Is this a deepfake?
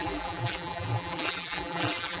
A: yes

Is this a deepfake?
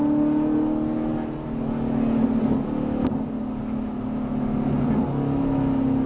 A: no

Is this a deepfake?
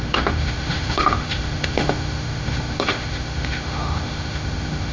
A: yes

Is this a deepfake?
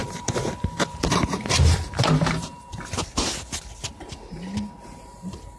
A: yes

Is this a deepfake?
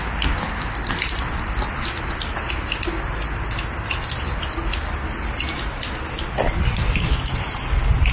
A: no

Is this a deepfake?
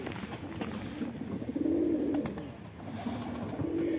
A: no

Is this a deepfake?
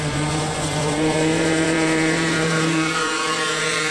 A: yes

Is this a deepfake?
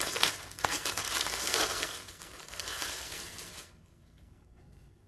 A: yes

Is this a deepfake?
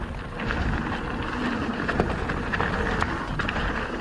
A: no